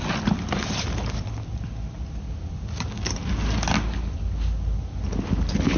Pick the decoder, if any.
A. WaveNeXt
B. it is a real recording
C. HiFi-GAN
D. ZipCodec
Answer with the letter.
B